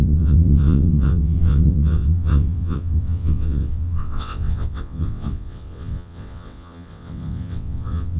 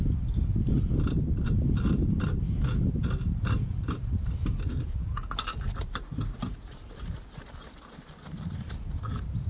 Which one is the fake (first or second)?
first